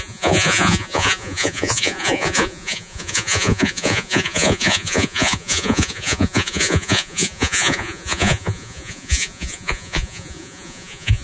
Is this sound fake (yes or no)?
yes